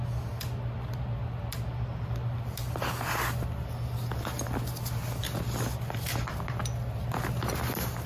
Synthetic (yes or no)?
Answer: no